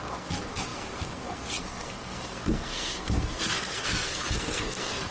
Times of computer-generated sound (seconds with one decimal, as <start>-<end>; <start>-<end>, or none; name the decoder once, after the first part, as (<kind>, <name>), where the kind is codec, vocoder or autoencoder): 0.0-5.1 (codec, SNAC)